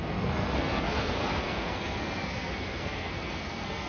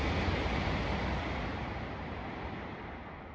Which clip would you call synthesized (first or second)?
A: first